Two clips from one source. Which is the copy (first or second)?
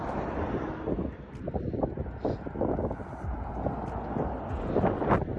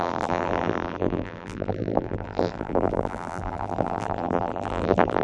second